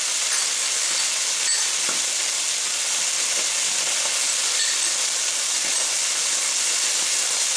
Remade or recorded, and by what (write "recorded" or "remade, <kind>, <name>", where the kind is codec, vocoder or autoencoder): recorded